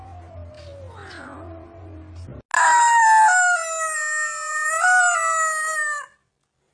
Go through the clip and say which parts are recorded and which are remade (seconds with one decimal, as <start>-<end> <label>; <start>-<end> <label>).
0.0-6.7 recorded